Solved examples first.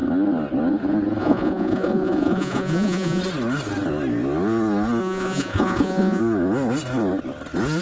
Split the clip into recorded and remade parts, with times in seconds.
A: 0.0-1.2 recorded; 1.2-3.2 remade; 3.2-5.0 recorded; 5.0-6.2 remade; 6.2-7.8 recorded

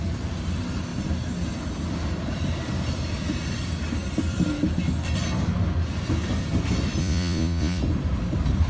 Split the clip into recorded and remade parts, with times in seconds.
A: 0.0-7.0 recorded; 7.0-7.8 remade; 7.8-8.7 recorded

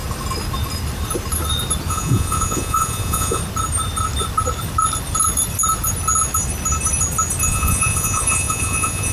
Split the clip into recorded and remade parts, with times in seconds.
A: 0.0-1.9 recorded; 1.9-3.4 remade; 3.4-7.5 recorded; 7.5-9.1 remade

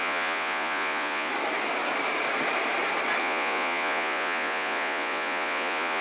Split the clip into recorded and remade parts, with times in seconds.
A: 0.0-1.3 remade; 1.3-3.2 recorded; 3.2-6.0 remade

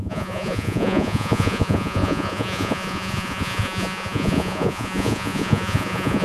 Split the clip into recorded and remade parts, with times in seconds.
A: 0.0-6.2 remade

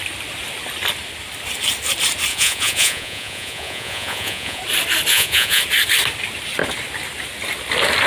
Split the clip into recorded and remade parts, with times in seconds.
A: 0.0-2.3 recorded; 2.3-4.6 remade; 4.6-5.1 recorded; 5.1-5.6 remade; 5.6-8.1 recorded

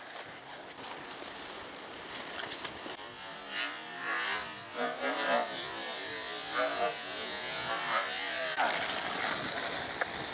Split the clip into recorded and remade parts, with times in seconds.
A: 0.0-6.7 recorded; 6.7-7.7 remade; 7.7-10.3 recorded

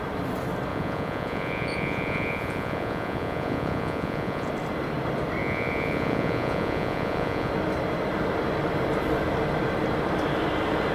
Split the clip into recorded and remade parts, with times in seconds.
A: 0.0-0.7 recorded; 0.7-4.5 remade; 4.5-5.4 recorded; 5.4-7.5 remade; 7.5-10.9 recorded